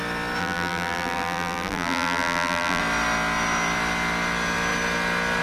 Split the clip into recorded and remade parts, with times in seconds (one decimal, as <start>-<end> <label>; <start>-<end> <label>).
0.0-0.4 recorded; 0.4-2.8 remade; 2.8-5.4 recorded